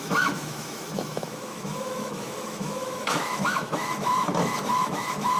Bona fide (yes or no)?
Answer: no